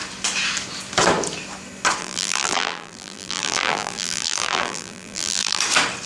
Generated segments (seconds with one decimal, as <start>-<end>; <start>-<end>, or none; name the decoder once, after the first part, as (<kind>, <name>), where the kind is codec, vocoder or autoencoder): 2.0-5.6 (vocoder, BigVGAN v2)